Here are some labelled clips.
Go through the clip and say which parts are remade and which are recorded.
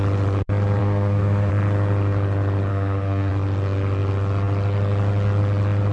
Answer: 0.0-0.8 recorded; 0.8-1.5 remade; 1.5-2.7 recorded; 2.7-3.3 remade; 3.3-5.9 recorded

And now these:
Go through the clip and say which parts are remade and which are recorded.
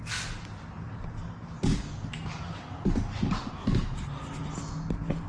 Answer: 0.0-5.3 recorded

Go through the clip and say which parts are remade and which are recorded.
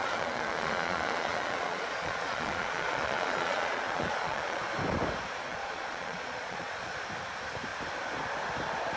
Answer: 0.0-4.6 remade; 4.6-5.5 recorded; 5.5-6.9 remade; 6.9-9.0 recorded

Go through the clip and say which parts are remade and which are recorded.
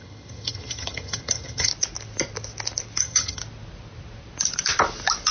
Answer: 0.0-1.7 remade; 1.7-3.0 recorded; 3.0-3.4 remade; 3.4-5.3 recorded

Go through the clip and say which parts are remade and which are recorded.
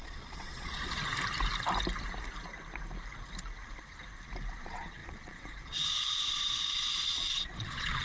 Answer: 0.0-1.0 remade; 1.0-4.6 recorded; 4.6-8.0 remade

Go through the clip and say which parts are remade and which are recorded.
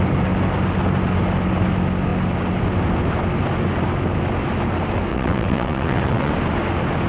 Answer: 0.0-5.1 recorded; 5.1-6.3 remade; 6.3-7.1 recorded